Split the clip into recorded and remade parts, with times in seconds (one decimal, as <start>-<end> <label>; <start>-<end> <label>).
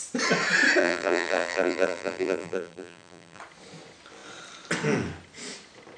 0.0-0.8 recorded; 0.8-3.4 remade; 3.4-6.0 recorded